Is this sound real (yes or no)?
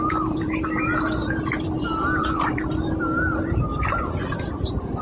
no